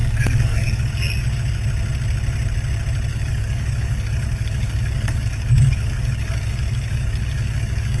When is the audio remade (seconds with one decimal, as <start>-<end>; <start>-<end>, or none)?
0.0-0.9; 3.1-8.0